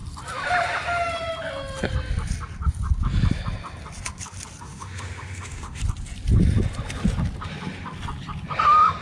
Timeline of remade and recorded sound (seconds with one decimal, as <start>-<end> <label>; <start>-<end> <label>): 0.0-4.6 recorded; 4.6-5.8 remade; 5.8-9.0 recorded